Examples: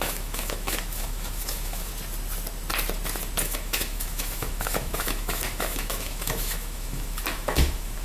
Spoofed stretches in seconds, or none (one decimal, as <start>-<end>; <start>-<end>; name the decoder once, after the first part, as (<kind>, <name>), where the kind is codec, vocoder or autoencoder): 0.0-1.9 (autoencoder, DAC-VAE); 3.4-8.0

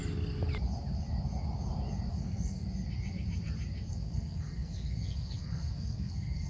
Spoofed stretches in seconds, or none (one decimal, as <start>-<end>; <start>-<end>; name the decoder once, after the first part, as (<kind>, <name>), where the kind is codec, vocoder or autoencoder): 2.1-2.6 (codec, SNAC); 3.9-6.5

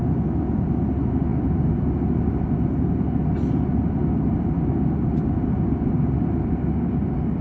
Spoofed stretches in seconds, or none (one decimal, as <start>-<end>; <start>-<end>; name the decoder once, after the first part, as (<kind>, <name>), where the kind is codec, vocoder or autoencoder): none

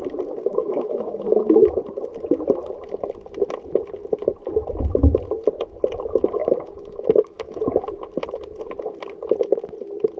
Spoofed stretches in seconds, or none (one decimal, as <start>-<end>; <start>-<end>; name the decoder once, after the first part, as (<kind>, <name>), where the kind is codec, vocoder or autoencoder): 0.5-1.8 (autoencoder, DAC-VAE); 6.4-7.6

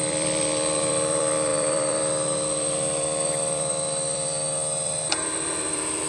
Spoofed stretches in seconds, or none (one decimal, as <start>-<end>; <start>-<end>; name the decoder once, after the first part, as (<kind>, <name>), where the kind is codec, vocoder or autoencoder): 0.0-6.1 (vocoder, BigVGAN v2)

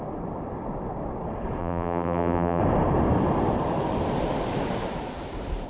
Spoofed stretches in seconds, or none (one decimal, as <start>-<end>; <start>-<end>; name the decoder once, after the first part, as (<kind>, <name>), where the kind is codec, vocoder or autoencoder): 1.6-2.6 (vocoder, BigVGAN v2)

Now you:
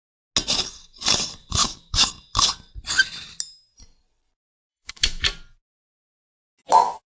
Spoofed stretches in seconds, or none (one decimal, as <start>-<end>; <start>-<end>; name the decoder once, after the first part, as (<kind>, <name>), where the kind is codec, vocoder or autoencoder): 1.6-2.1 (autoencoder, DAC-VAE); 4.7-5.2